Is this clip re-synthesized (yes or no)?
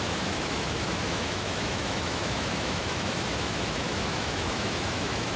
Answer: yes